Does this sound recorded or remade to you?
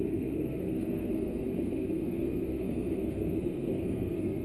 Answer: remade